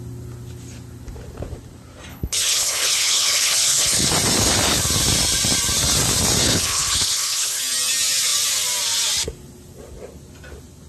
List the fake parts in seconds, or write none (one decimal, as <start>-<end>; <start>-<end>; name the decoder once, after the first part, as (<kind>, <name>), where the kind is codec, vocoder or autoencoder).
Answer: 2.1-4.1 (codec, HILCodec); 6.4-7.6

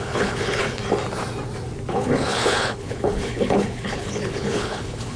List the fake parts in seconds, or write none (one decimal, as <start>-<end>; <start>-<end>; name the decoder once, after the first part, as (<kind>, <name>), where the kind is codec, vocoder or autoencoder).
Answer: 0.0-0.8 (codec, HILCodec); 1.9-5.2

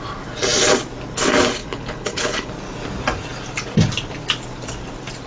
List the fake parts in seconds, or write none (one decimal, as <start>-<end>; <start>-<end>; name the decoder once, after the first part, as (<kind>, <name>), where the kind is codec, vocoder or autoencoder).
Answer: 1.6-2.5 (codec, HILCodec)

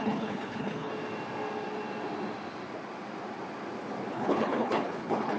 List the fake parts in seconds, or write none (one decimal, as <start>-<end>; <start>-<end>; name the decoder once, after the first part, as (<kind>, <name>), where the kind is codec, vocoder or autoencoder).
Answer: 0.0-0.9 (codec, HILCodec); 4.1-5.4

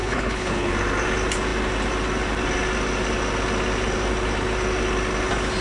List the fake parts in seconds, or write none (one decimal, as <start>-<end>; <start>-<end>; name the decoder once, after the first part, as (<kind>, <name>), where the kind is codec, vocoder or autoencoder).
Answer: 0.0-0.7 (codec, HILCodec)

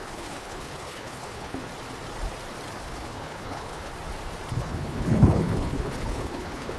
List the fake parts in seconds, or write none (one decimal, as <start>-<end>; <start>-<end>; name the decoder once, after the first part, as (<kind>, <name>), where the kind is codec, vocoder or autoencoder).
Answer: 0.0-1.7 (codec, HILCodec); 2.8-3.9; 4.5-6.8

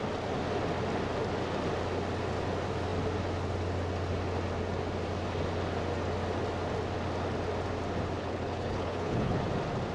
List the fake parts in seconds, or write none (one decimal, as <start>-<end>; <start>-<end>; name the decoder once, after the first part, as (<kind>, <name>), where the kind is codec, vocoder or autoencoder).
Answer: 8.2-9.4 (codec, HILCodec)